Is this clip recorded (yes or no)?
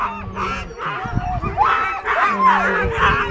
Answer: yes